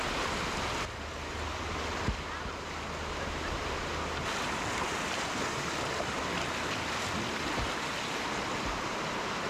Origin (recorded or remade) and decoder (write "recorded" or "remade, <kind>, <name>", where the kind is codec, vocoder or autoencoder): recorded